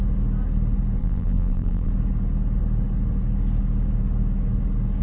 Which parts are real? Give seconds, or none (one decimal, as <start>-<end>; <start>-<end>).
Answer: 0.0-1.0; 1.9-5.0